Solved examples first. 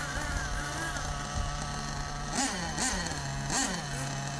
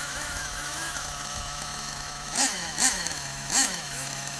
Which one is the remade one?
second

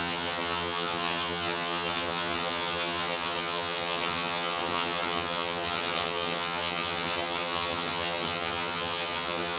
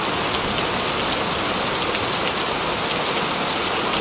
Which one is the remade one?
first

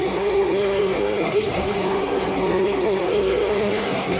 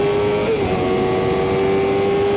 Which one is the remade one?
first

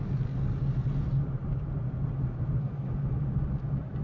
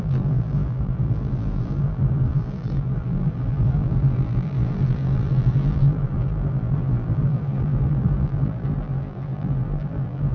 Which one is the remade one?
second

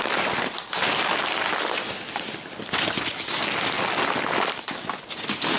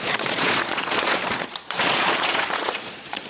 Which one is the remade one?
second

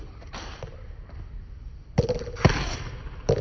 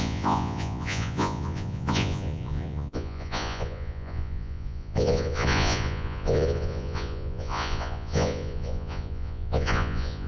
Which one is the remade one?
second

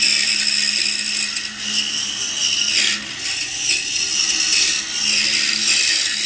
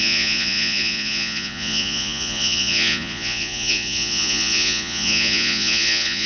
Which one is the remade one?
second